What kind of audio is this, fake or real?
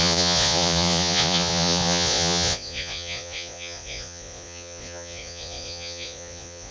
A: fake